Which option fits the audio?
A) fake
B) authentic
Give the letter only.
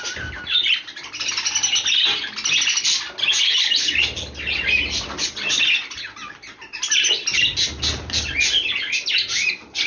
B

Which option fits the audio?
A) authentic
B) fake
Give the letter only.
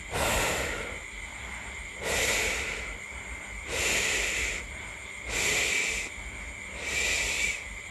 A